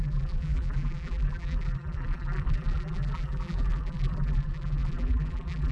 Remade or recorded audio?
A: remade